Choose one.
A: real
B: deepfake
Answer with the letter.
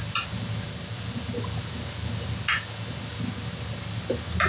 A